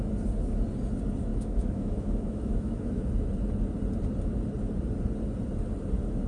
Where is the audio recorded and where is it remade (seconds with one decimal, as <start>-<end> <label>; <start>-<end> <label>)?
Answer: 0.0-1.3 recorded; 1.3-3.0 remade; 3.0-6.3 recorded

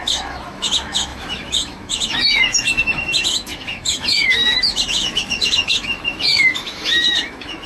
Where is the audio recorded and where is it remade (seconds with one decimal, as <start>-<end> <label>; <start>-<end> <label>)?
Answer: 0.0-7.7 remade

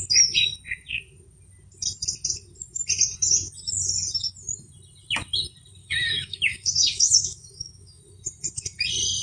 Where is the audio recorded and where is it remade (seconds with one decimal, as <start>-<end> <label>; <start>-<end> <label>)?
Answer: 0.0-5.8 recorded; 5.8-8.0 remade; 8.0-9.2 recorded

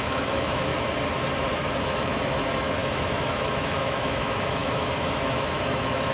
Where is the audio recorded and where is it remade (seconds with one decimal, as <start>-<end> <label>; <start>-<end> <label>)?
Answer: 0.0-0.7 remade; 0.7-1.8 recorded; 1.8-6.1 remade

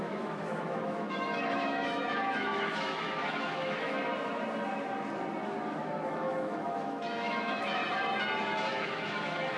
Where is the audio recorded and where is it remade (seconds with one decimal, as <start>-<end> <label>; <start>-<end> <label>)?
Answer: 0.0-4.1 remade; 4.1-5.8 recorded; 5.8-7.8 remade; 7.8-8.7 recorded; 8.7-9.6 remade